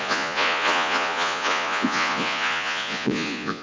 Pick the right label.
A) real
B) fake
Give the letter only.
B